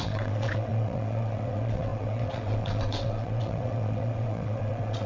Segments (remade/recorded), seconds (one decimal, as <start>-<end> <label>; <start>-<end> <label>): 0.0-5.1 remade